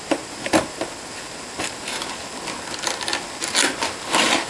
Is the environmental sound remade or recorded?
recorded